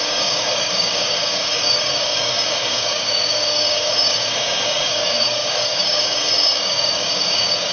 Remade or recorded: remade